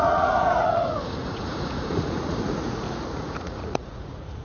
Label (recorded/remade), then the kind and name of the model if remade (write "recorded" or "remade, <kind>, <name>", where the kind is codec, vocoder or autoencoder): remade, vocoder, Vocos